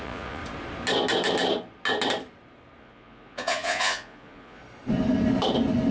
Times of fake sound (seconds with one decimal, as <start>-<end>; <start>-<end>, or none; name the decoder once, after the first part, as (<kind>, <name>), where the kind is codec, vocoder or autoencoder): 0.0-0.4 (vocoder, Vocos); 2.8-4.6